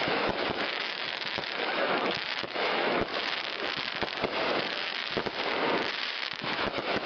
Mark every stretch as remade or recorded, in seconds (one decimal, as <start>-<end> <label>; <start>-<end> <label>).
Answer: 0.0-3.1 remade; 3.1-4.6 recorded; 4.6-5.0 remade; 5.0-6.2 recorded; 6.2-7.1 remade